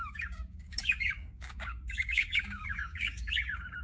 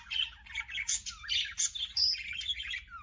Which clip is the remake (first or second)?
first